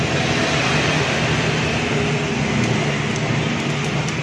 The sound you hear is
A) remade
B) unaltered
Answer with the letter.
B